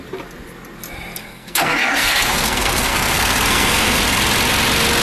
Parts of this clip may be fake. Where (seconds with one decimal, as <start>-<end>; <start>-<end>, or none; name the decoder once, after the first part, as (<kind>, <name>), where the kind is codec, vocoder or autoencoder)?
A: 1.2-4.0 (codec, SNAC)